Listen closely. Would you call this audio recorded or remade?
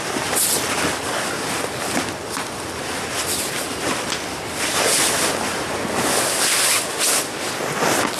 recorded